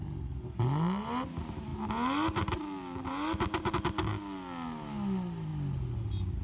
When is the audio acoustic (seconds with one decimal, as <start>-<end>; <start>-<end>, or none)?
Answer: 0.0-6.4